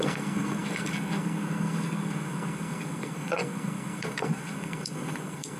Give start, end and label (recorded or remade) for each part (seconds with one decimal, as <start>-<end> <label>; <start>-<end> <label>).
0.0-5.6 remade